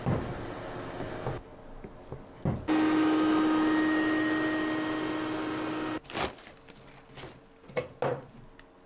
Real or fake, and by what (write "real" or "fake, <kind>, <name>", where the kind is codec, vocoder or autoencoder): real